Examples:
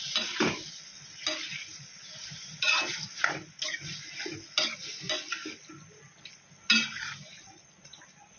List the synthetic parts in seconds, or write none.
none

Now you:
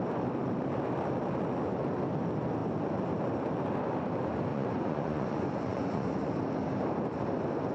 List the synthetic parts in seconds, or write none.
4.5-6.3

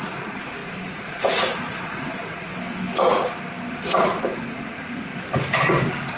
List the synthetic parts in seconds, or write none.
0.0-2.5; 3.7-5.1

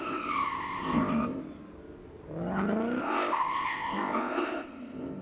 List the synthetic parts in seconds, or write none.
0.0-1.4; 3.0-5.2

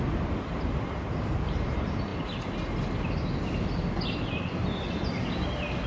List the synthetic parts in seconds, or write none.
0.0-2.1

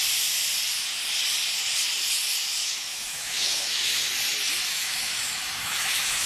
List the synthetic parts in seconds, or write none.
2.6-4.1; 4.7-6.3

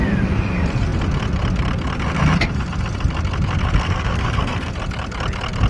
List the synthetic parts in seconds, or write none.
3.8-4.7